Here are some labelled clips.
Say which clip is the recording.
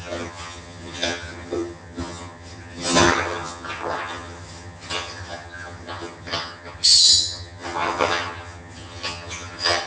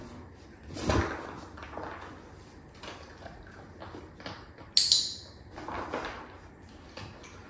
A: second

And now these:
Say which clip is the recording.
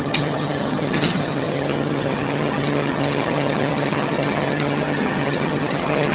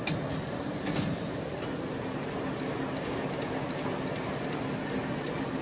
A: second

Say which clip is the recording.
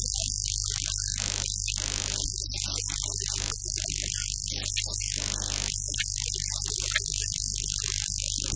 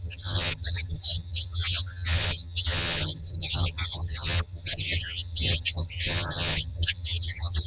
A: first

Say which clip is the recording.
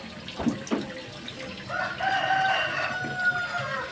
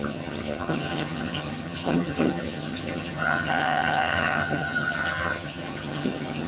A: first